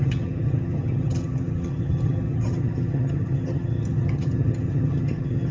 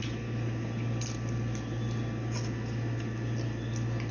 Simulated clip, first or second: first